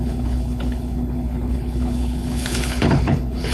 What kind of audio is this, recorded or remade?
remade